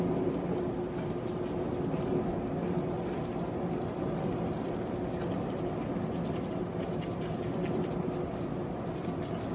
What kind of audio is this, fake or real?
real